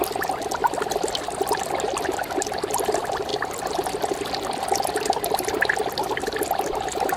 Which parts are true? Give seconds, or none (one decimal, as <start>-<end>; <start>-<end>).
0.0-7.2